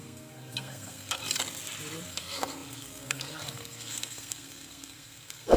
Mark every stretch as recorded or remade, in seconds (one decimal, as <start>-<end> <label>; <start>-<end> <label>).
0.0-1.2 remade; 1.2-2.1 recorded; 2.1-5.6 remade